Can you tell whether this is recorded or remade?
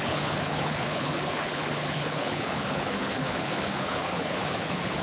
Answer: remade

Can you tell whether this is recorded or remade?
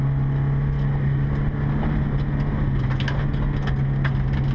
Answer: recorded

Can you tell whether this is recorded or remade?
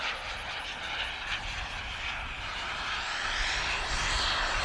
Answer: recorded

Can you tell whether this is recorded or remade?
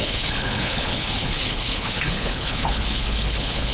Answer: remade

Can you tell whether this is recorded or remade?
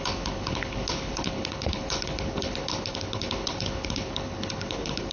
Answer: remade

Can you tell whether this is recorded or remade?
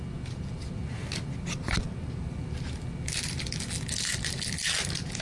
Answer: recorded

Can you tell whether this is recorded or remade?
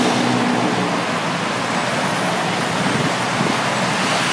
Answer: recorded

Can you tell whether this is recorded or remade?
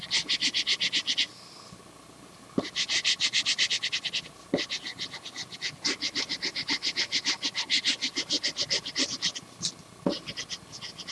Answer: recorded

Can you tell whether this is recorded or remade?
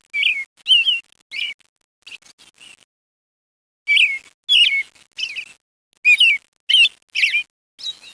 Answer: recorded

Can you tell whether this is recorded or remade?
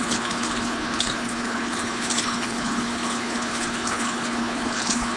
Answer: remade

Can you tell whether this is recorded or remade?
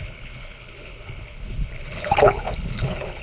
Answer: remade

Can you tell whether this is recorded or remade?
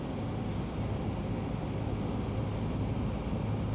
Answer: recorded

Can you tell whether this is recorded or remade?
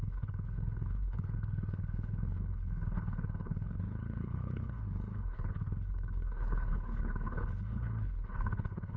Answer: remade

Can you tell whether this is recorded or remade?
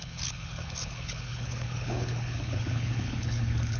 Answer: remade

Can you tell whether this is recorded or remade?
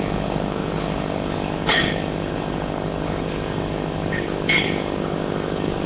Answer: remade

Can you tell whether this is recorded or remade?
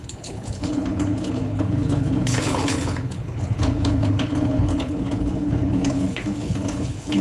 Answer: remade